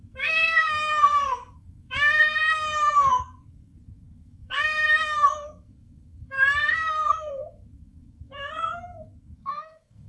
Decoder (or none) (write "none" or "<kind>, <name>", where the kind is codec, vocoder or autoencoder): codec, SNAC